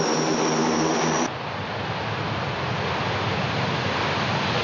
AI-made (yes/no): no